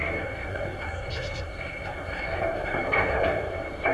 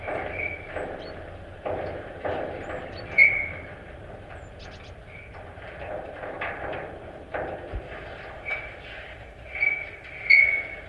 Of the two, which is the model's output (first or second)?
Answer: first